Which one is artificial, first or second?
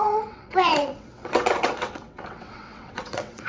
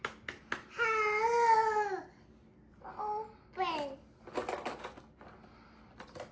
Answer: first